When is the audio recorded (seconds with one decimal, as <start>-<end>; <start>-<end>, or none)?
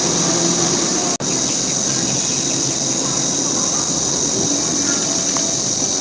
0.0-6.0